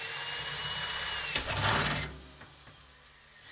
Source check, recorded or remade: recorded